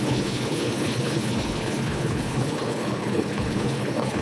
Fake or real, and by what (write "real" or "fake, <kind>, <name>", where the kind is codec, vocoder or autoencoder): fake, codec, HILCodec